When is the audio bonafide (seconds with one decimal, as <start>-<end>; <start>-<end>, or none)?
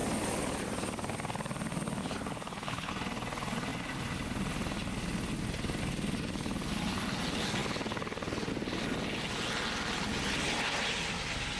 0.0-2.0; 2.9-11.6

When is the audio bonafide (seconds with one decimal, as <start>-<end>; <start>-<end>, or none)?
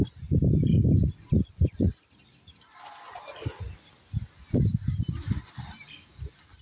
0.0-6.6